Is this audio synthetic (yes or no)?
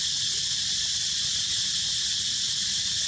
no